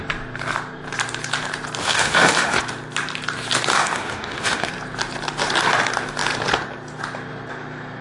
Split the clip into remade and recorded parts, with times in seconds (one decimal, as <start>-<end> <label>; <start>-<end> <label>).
0.0-1.8 recorded; 1.8-2.6 remade; 2.6-3.7 recorded; 3.7-4.7 remade; 4.7-8.0 recorded